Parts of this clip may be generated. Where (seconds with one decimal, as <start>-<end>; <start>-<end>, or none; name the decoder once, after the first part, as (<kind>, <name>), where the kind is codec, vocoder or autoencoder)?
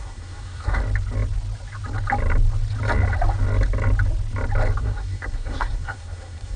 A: 0.0-0.8 (codec, SNAC); 4.8-6.6